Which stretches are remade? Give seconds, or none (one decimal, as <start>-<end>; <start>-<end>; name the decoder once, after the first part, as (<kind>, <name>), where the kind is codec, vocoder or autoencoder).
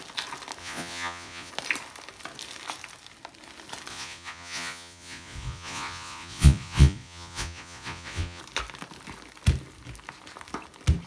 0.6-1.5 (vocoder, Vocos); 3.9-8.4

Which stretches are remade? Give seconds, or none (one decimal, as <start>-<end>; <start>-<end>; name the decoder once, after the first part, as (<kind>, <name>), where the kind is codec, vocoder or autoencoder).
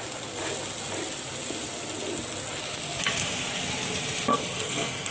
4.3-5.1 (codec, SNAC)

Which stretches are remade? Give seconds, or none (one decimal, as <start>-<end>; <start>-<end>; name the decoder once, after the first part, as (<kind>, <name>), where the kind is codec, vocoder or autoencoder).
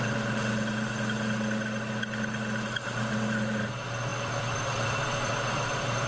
0.0-6.1 (vocoder, BigVGAN v2)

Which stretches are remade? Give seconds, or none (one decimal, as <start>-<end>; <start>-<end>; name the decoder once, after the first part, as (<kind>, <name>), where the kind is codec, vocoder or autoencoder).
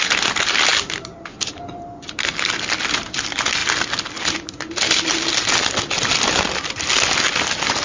none